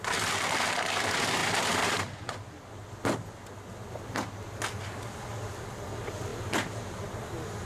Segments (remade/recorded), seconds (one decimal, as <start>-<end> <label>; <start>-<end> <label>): 0.0-7.7 recorded